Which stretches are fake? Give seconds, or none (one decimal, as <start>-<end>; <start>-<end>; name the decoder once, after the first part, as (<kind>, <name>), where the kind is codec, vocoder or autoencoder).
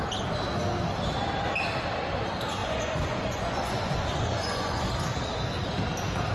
2.6-4.9 (vocoder, Vocos)